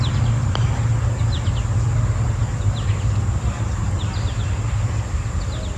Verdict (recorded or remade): recorded